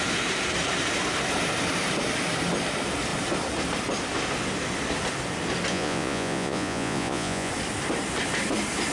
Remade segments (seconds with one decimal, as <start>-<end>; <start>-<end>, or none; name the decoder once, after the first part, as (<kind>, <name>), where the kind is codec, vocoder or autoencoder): 5.7-7.5 (vocoder, Vocos)